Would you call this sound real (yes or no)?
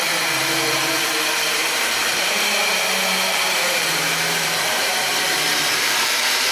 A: no